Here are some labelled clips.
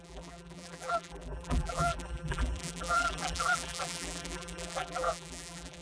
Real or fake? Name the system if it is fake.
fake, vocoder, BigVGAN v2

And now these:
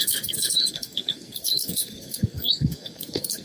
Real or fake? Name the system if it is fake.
fake, codec, SNAC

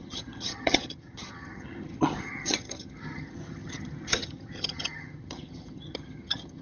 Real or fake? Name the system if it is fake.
fake, vocoder, HiFi-GAN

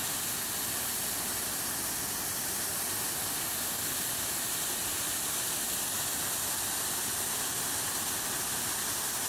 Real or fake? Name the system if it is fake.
real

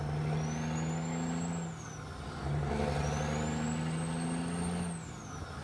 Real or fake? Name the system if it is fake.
real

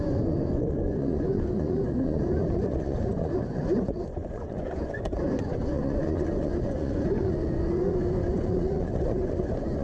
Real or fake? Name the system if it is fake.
fake, vocoder, Vocos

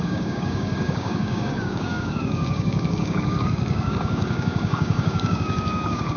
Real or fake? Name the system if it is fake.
fake, codec, DAC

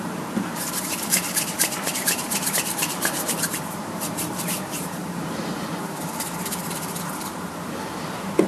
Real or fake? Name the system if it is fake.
fake, vocoder, BigVGAN v2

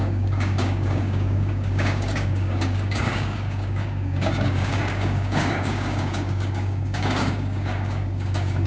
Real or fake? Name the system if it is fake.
fake, codec, DAC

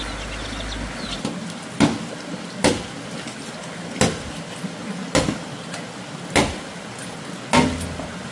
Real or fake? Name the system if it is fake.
real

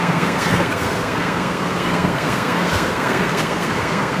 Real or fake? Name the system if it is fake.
fake, codec, SNAC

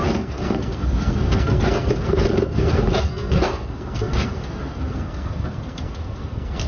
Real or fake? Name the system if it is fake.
fake, codec, SNAC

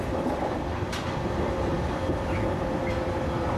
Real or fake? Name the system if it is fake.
fake, vocoder, BigVGAN v2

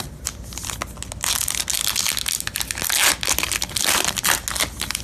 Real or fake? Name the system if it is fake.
real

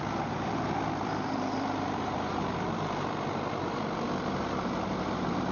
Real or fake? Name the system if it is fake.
fake, vocoder, BigVGAN v2